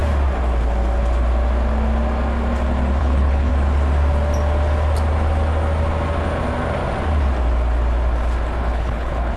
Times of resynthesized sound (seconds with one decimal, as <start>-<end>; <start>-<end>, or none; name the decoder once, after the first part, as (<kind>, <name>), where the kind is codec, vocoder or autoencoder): 3.0-3.5 (codec, HILCodec); 8.6-9.4